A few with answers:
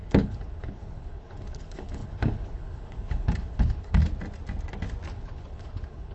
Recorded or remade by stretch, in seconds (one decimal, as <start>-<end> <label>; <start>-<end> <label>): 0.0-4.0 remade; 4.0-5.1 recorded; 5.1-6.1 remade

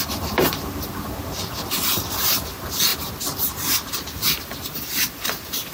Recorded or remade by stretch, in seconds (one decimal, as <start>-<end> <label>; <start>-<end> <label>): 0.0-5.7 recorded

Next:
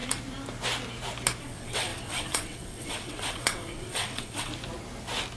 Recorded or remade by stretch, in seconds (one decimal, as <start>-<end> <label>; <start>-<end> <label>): 0.0-1.4 recorded; 1.4-4.5 remade; 4.5-5.4 recorded